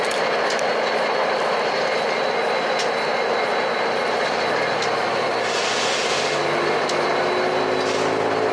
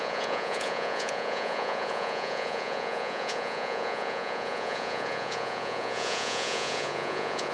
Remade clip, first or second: second